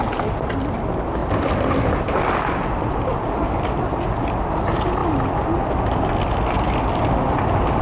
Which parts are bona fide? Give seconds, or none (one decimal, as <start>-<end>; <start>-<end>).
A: 0.0-1.2; 3.2-7.8